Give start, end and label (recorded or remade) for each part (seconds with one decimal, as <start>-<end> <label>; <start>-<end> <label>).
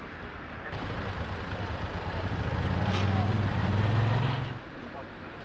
0.0-5.4 recorded